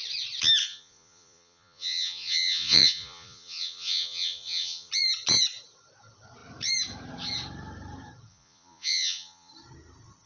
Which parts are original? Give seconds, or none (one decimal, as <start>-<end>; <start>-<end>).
0.0-0.6; 4.9-8.3; 9.5-10.3